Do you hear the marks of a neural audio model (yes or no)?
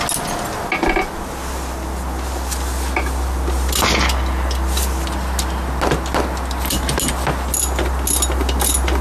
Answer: no